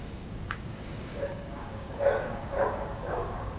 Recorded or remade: remade